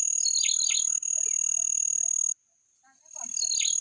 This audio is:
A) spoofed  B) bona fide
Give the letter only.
B